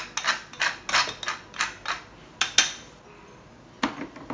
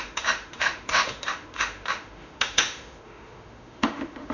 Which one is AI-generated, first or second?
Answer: second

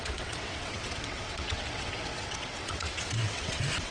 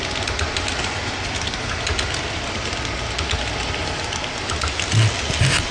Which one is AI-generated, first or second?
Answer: first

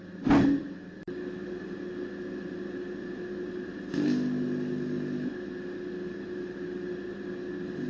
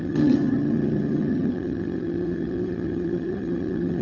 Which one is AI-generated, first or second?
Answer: second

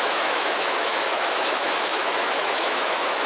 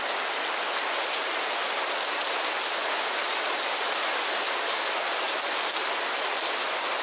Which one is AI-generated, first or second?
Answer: first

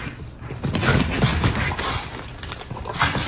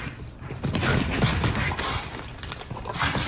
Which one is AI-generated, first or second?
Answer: second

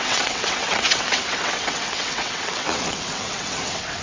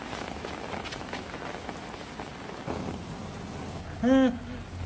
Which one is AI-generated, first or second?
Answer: first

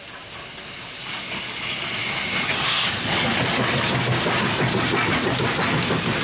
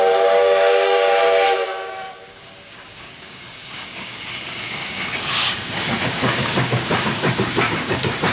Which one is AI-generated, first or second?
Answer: second